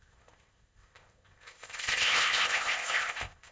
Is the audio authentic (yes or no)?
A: no